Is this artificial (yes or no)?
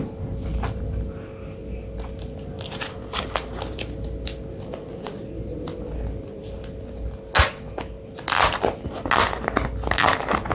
no